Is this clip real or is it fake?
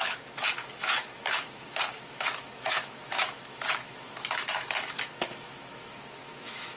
fake